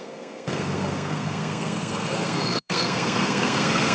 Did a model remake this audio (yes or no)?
yes